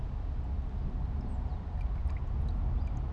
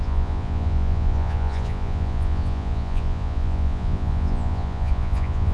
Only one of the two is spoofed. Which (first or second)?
second